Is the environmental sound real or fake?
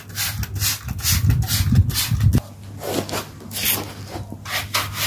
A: real